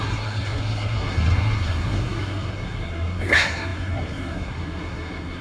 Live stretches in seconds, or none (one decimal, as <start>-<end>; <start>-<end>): none